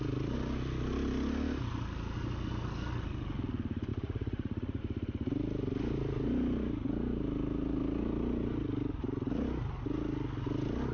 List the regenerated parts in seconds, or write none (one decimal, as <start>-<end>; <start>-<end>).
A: 3.9-4.8